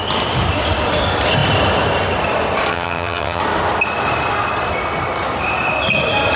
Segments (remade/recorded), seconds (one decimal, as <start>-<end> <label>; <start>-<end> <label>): 0.0-2.7 recorded; 2.7-3.4 remade; 3.4-6.4 recorded